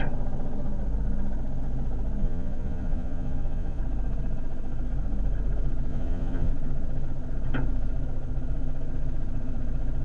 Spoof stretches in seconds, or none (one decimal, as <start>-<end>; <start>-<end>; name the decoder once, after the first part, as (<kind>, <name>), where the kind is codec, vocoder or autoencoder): 2.2-3.8 (vocoder, Vocos); 5.9-6.5